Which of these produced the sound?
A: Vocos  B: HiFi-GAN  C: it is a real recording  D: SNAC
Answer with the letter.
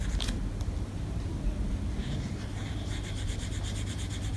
C